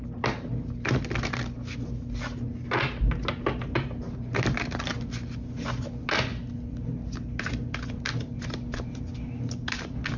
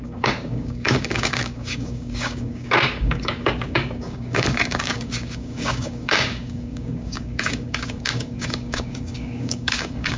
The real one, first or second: first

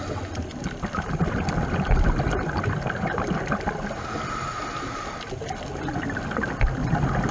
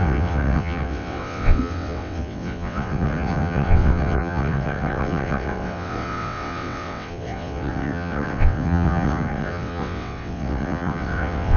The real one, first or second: first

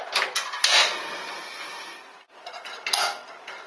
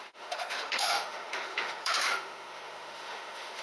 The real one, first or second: first